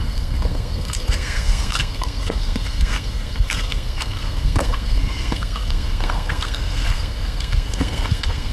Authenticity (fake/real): fake